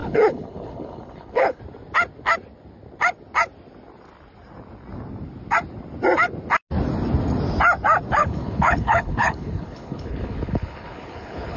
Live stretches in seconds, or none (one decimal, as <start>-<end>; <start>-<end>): 1.6-8.2